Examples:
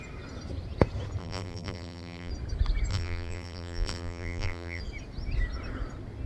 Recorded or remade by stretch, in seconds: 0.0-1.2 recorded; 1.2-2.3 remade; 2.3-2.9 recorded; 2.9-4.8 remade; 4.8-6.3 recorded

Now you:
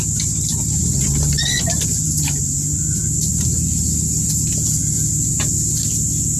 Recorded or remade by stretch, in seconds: 0.0-6.4 recorded

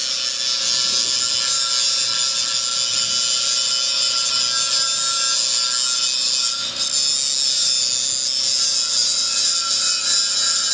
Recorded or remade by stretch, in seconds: 0.0-10.7 recorded

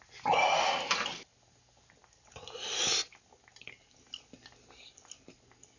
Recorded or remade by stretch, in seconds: 0.0-5.8 recorded

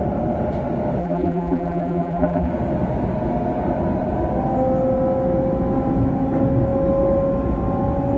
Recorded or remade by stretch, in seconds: 0.0-1.0 recorded; 1.0-2.5 remade; 2.5-8.2 recorded

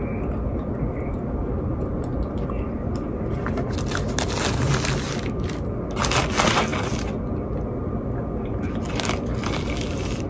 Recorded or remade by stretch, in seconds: 0.0-2.1 recorded; 2.1-2.9 remade; 2.9-10.3 recorded

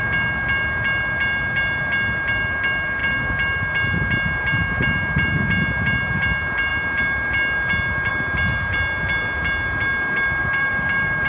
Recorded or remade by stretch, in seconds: 0.0-10.4 recorded; 10.4-11.3 remade